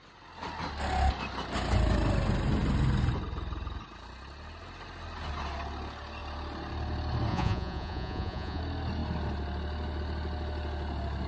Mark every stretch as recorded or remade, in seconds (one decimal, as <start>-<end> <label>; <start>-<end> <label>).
0.0-7.3 recorded; 7.3-8.6 remade; 8.6-11.3 recorded